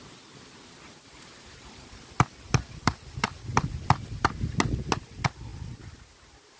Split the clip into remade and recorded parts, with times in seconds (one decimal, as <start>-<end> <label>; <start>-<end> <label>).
0.0-6.6 recorded